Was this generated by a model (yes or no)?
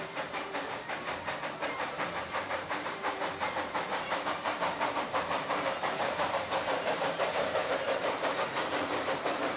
yes